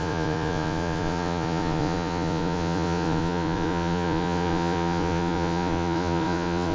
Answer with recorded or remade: remade